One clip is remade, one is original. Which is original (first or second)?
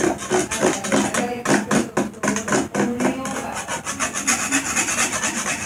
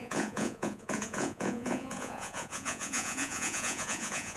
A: first